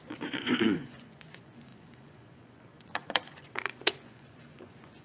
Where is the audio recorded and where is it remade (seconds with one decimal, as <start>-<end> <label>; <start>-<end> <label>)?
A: 0.0-5.0 remade